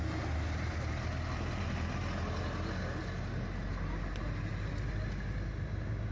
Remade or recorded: recorded